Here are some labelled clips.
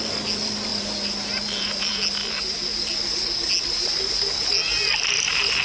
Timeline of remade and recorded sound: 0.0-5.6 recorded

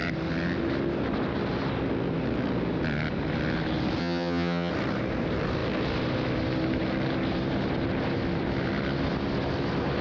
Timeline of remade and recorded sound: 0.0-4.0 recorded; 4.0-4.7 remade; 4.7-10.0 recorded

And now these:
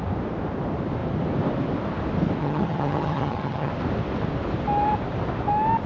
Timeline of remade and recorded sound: 0.0-2.4 recorded; 2.4-3.7 remade; 3.7-5.9 recorded